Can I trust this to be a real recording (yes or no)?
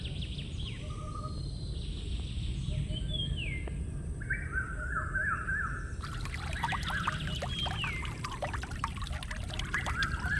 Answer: yes